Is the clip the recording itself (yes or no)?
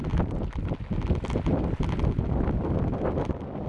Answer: yes